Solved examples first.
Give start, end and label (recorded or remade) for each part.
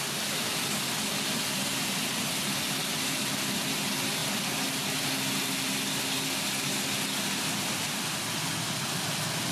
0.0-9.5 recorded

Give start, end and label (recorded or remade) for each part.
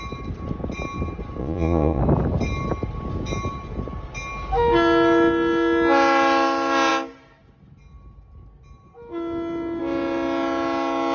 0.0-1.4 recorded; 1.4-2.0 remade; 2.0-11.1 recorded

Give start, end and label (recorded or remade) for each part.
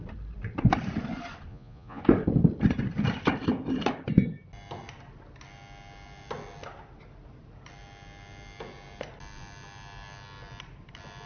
0.0-1.5 recorded; 1.5-2.0 remade; 2.0-11.3 recorded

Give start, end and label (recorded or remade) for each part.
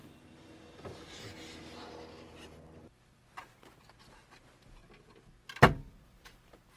0.0-6.8 recorded